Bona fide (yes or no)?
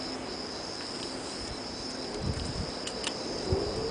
yes